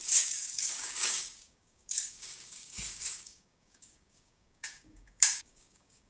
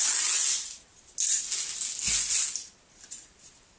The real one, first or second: second